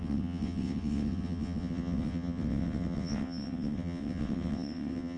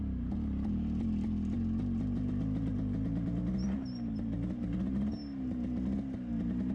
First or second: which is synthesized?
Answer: first